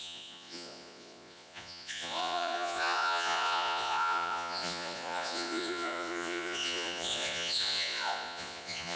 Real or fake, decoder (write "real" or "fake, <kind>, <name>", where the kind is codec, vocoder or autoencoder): fake, vocoder, Vocos